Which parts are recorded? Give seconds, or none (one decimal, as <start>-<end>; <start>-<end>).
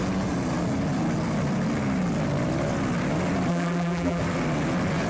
0.0-3.5; 4.2-5.1